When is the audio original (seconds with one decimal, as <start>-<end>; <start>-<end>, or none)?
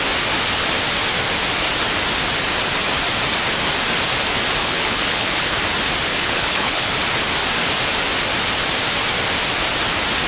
0.0-4.6; 5.6-6.1; 7.0-10.3